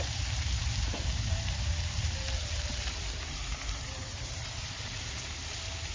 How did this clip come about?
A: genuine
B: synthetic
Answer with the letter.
B